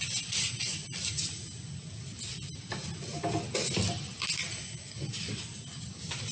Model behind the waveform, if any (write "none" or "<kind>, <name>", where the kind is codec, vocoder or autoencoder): none